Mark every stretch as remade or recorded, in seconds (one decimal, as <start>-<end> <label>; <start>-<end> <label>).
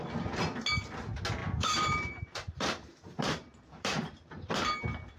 0.0-1.4 recorded; 1.4-4.5 remade; 4.5-5.2 recorded